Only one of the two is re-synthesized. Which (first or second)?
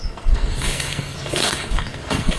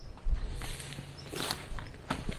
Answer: first